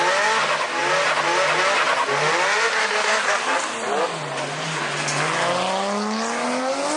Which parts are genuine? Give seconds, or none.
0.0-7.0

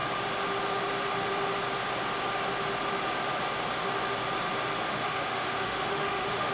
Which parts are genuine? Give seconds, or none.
0.0-4.9

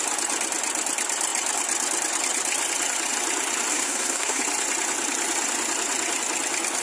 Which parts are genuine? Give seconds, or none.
0.0-3.7; 4.4-6.8

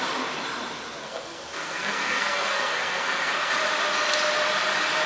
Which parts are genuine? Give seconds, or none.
0.0-1.0; 3.5-5.1

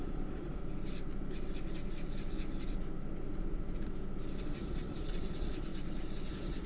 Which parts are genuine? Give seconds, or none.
0.6-4.4; 5.7-6.3

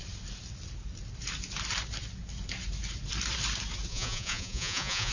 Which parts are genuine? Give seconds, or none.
0.0-3.9

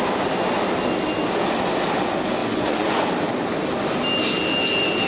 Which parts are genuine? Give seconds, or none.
0.0-2.4; 3.1-5.1

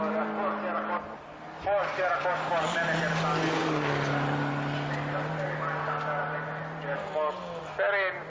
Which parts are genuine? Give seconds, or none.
0.0-8.3